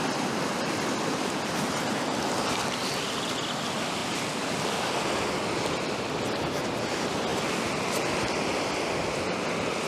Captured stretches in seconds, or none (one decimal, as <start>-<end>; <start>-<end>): 0.0-9.9